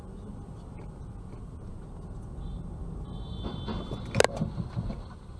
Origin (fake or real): real